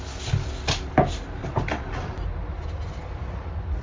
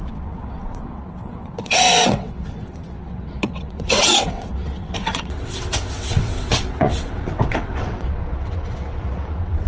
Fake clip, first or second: second